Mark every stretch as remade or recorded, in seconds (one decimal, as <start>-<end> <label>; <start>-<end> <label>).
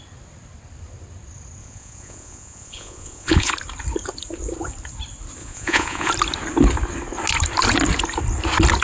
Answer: 0.0-1.6 recorded; 1.6-3.5 remade; 3.5-5.4 recorded; 5.4-6.1 remade; 6.1-8.8 recorded